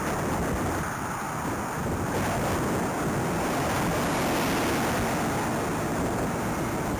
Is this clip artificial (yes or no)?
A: no